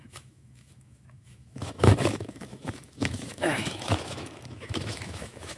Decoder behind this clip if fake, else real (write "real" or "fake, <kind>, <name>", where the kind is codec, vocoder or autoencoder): fake, autoencoder, DAC-VAE